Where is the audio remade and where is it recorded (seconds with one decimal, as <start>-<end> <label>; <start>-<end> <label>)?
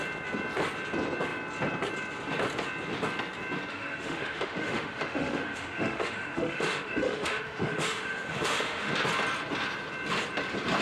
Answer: 0.0-3.7 recorded; 3.7-8.9 remade; 8.9-10.8 recorded